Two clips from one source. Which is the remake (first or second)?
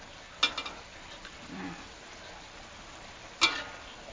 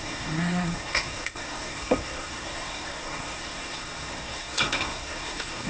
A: second